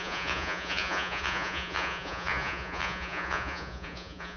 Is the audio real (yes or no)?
no